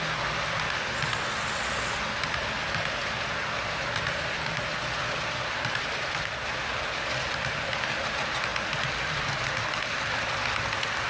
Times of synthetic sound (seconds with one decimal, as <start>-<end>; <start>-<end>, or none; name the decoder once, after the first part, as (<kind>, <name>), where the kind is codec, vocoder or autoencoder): none